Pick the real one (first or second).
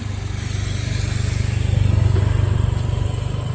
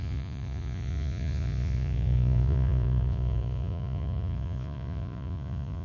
first